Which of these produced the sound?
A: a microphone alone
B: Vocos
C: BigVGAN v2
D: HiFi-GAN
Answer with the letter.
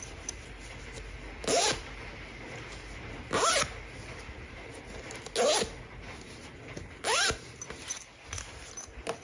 A